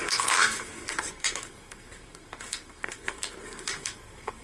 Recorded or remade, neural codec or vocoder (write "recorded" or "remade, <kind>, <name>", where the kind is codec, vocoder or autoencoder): remade, codec, SNAC